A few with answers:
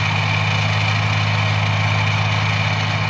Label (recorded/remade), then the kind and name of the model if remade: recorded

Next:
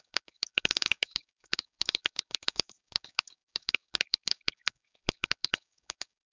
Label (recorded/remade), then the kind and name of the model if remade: remade, codec, DAC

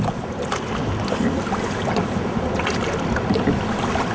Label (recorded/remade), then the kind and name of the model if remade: recorded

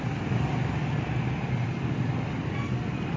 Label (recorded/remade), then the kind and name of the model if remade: recorded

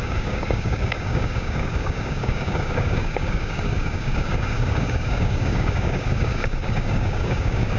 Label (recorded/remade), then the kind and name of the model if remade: remade, codec, DAC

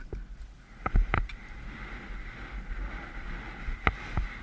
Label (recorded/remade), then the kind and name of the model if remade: recorded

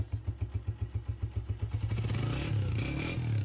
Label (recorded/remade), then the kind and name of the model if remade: recorded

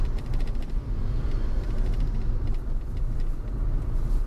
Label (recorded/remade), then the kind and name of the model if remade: recorded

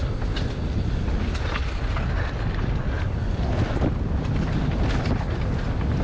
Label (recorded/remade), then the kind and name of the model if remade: recorded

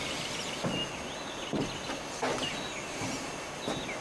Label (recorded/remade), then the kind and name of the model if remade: recorded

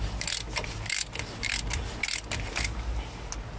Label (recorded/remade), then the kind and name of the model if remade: recorded